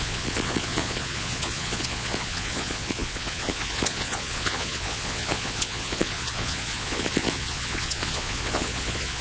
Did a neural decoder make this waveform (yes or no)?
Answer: yes